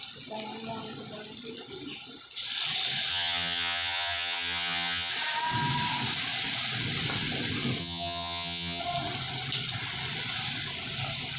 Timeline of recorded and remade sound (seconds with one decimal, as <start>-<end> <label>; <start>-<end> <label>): 0.0-3.1 recorded; 3.1-5.1 remade; 5.1-7.8 recorded; 7.8-8.8 remade; 8.8-11.4 recorded